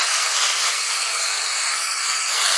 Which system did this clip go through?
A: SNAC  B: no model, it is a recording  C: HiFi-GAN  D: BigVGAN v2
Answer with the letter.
A